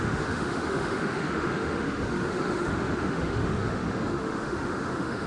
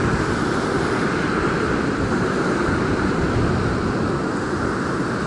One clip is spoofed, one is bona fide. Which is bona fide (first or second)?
second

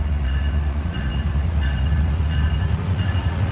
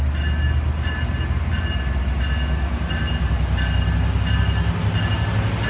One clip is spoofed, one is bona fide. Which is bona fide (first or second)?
second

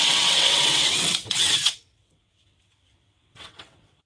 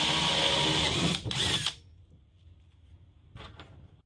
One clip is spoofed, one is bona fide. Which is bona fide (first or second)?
second